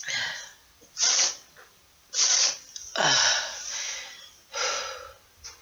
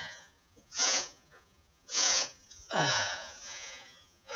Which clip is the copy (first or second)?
second